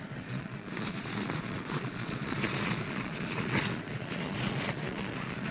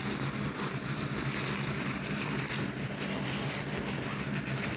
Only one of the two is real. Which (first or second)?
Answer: second